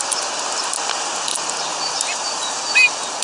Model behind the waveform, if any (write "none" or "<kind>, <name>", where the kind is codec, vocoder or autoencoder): none